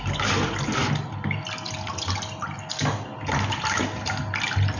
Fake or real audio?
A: real